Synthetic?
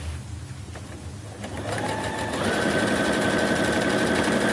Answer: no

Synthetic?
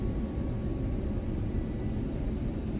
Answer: no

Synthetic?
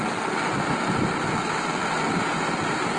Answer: no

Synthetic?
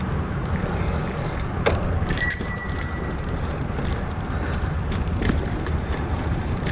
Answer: yes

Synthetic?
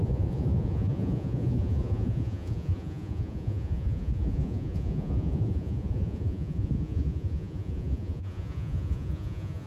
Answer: yes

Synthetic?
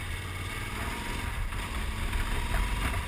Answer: no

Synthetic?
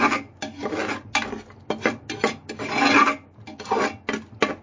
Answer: no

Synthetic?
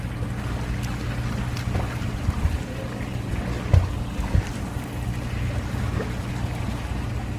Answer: no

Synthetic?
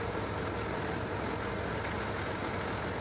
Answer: no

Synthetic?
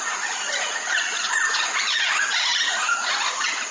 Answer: yes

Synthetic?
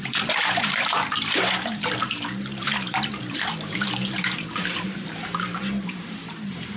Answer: yes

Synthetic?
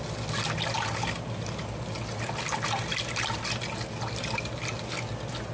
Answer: no